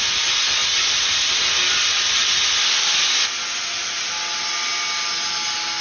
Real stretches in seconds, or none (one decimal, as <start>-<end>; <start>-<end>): 0.0-5.8